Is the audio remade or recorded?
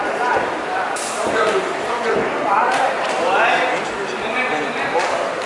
recorded